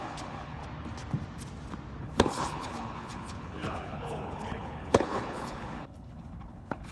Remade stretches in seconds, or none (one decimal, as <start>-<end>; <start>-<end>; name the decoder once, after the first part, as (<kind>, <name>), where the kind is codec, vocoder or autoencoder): 0.0-0.6 (codec, HILCodec); 2.0-6.9